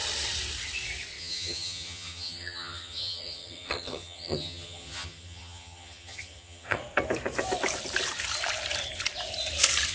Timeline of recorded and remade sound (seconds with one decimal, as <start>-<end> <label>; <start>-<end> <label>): 0.0-1.2 recorded; 1.2-6.8 remade; 6.8-9.9 recorded